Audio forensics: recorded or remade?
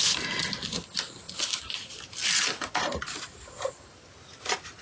recorded